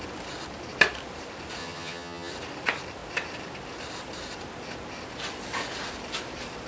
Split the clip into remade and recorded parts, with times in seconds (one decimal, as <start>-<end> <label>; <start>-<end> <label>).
0.0-1.6 recorded; 1.6-2.3 remade; 2.3-6.7 recorded

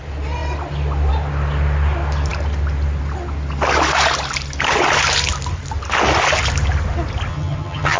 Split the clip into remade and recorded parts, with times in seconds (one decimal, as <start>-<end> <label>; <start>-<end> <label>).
0.0-7.3 recorded; 7.3-8.0 remade

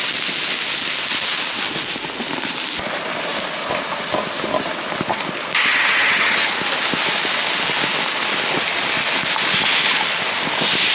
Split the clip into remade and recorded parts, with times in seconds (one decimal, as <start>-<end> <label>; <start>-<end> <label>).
0.0-5.7 recorded; 5.7-6.5 remade; 6.5-10.9 recorded

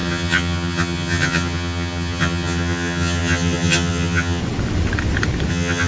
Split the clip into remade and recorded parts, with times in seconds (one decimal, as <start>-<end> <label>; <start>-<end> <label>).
0.0-4.4 remade; 4.4-5.5 recorded; 5.5-5.9 remade

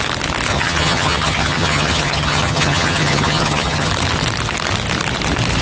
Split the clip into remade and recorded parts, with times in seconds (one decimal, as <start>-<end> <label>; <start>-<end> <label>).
0.0-0.5 recorded; 0.5-3.9 remade; 3.9-5.6 recorded